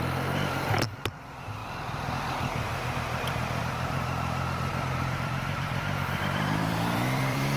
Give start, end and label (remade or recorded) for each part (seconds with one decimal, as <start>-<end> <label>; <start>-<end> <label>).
0.0-1.6 remade; 1.6-3.6 recorded; 3.6-7.6 remade

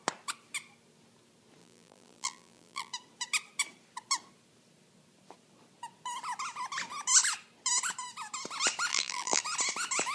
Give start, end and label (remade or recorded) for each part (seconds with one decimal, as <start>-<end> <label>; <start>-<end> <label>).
0.0-1.6 recorded; 1.6-2.9 remade; 2.9-8.9 recorded; 8.9-9.4 remade; 9.4-10.1 recorded